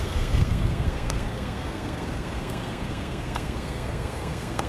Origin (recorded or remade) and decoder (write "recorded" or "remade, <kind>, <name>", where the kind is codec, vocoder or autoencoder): remade, codec, SNAC